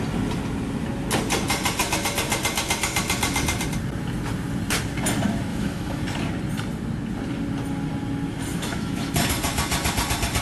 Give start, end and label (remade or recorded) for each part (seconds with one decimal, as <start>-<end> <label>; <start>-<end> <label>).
0.0-5.5 recorded; 5.5-6.0 remade; 6.0-8.5 recorded; 8.5-9.1 remade; 9.1-10.4 recorded